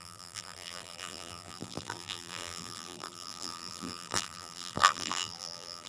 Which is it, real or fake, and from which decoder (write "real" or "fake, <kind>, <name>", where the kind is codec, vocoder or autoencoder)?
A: fake, vocoder, BigVGAN v2